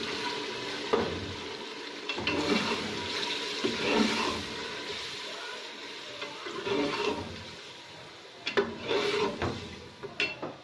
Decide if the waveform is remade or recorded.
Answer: recorded